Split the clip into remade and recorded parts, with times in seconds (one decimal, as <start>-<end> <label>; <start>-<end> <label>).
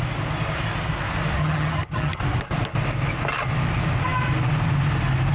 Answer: 0.0-1.4 recorded; 1.4-2.2 remade; 2.2-5.3 recorded